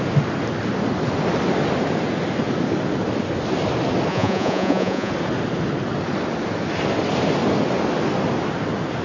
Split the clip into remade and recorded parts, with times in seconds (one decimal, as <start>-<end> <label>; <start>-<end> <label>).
0.0-4.1 recorded; 4.1-5.1 remade; 5.1-9.0 recorded